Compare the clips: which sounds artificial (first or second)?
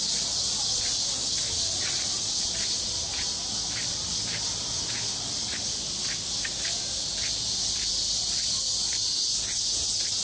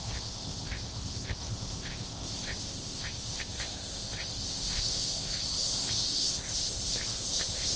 second